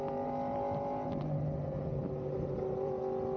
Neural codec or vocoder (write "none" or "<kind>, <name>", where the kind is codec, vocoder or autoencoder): none